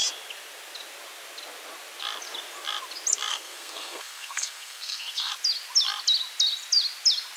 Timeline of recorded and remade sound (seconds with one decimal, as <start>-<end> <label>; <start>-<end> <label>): 0.0-3.3 recorded; 3.3-5.3 remade; 5.3-7.4 recorded